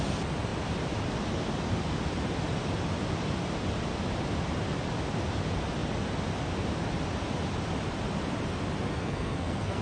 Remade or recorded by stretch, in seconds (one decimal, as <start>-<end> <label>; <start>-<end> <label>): 0.0-8.9 recorded; 8.9-9.8 remade

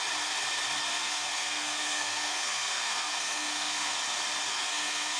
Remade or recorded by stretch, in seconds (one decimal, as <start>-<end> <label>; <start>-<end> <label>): 0.0-0.9 recorded; 0.9-4.0 remade; 4.0-4.5 recorded; 4.5-5.2 remade

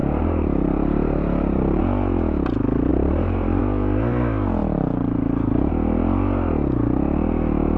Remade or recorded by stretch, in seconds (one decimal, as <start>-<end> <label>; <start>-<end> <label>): 0.0-1.8 remade; 1.8-2.9 recorded; 2.9-3.6 remade; 3.6-4.6 recorded; 4.6-5.7 remade; 5.7-7.8 recorded

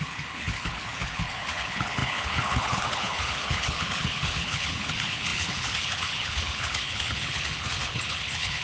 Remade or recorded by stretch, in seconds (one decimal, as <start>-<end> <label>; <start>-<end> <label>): 0.0-8.6 remade

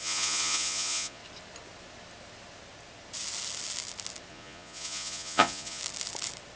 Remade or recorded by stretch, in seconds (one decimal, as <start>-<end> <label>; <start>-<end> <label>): 0.0-1.2 remade; 1.2-4.3 recorded; 4.3-5.8 remade; 5.8-6.6 recorded

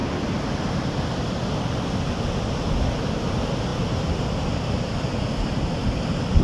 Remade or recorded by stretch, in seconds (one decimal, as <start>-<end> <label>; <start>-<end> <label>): 0.0-6.4 recorded

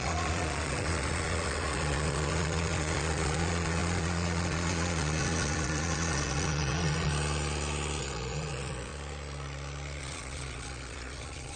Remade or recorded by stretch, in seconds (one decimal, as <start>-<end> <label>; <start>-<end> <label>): 0.0-7.1 remade; 7.1-8.0 recorded; 8.0-8.9 remade; 8.9-10.0 recorded; 10.0-11.6 remade

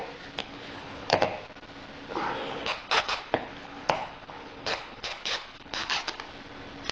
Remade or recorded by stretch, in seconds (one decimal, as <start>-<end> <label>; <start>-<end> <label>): 0.0-0.4 recorded; 0.4-1.2 remade; 1.2-2.4 recorded; 2.4-6.0 remade; 6.0-6.9 recorded